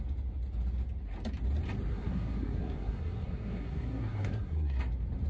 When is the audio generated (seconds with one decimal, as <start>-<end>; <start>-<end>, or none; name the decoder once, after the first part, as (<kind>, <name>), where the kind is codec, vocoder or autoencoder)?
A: 1.9-4.8 (codec, SNAC)

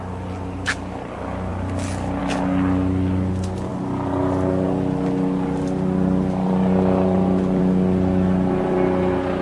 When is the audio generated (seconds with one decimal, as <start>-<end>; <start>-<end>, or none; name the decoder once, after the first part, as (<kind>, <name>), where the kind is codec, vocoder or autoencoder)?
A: 3.7-7.6 (vocoder, BigVGAN v2)